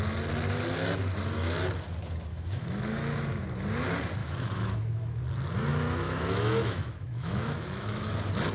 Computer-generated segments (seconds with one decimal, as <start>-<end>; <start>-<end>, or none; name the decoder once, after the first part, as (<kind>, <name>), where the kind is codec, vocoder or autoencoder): 2.3-3.4 (autoencoder, DAC-VAE); 4.2-5.2; 5.7-8.1